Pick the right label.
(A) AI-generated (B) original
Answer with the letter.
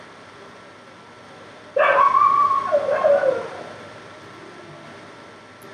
B